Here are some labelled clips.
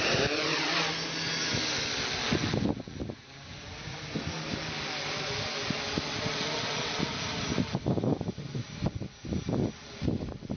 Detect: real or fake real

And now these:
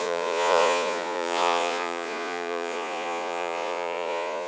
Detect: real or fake fake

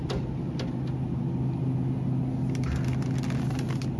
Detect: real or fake real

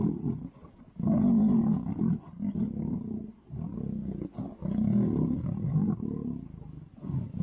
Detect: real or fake real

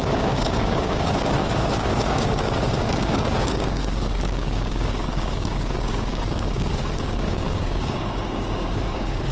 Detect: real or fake fake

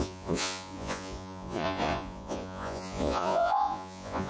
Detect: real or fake fake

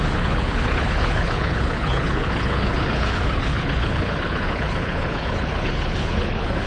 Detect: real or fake fake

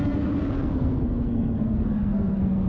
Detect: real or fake fake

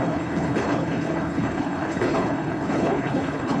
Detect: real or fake fake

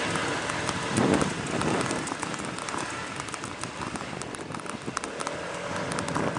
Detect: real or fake real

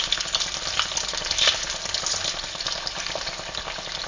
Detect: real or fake real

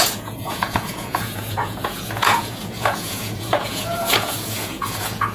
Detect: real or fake fake